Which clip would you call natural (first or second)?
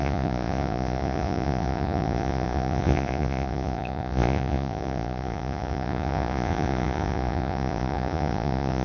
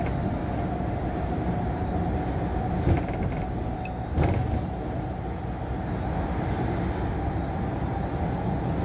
second